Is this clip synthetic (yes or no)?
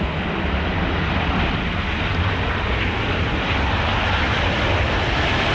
no